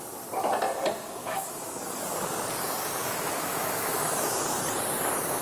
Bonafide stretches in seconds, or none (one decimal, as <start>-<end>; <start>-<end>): 0.0-1.2; 1.8-3.0; 4.4-5.4